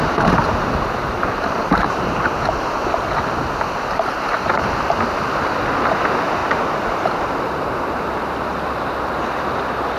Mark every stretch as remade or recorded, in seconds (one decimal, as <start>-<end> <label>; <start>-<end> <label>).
0.0-1.0 recorded; 1.0-2.7 remade; 2.7-6.4 recorded; 6.4-9.2 remade; 9.2-10.0 recorded